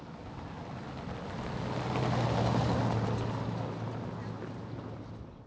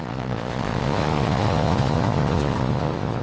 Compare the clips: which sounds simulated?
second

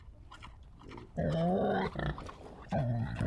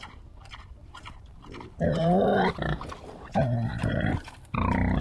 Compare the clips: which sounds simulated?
second